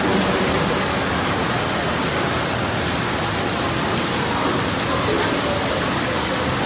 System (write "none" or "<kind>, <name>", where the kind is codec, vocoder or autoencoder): none